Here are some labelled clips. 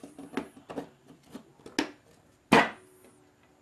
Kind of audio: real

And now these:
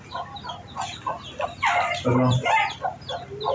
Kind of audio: real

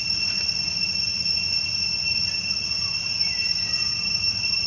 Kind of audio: real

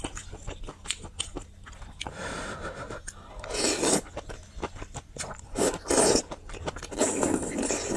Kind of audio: real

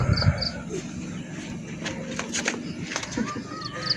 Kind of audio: real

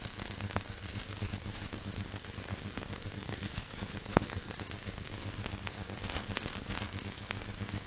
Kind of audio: fake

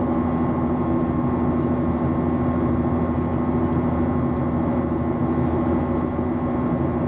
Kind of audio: real